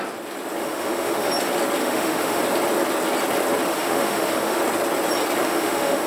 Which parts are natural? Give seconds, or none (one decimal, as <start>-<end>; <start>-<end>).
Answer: 0.0-0.6; 1.3-1.8; 2.4-3.7; 4.6-5.4